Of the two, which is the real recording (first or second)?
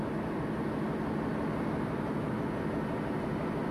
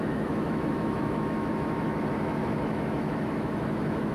first